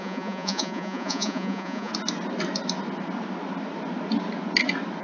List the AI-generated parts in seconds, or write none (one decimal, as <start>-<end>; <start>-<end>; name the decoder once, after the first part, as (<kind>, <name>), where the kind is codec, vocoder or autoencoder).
0.0-1.9 (vocoder, Vocos)